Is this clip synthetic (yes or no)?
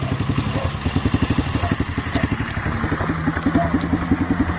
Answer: no